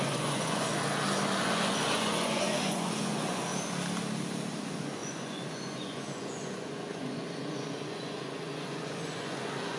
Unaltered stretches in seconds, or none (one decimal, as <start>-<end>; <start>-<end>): 0.7-1.4; 3.5-4.6